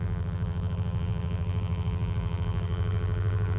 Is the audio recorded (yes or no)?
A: no